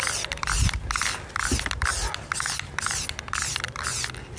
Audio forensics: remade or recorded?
recorded